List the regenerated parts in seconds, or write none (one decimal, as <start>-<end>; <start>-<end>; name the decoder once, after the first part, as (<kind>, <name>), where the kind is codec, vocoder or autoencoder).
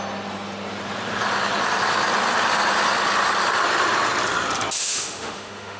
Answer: 4.8-5.8 (autoencoder, DAC-VAE)